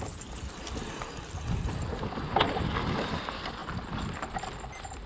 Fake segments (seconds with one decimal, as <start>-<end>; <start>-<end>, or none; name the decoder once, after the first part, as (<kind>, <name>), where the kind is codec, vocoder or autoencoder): none